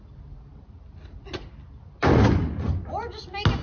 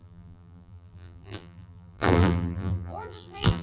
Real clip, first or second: first